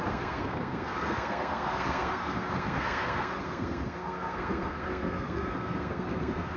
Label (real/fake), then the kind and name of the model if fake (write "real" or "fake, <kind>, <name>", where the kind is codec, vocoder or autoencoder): fake, codec, SNAC